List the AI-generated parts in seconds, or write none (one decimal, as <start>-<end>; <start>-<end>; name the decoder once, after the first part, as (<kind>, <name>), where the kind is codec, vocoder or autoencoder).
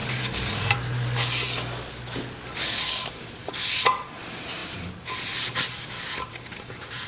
0.0-3.1 (codec, DAC)